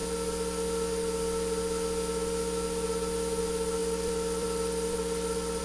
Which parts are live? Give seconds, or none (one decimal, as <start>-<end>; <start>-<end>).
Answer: 0.0-3.8